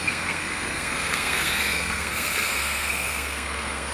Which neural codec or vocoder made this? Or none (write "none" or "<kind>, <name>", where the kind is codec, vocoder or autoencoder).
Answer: codec, SNAC